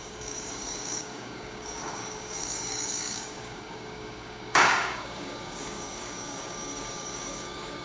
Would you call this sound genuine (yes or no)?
no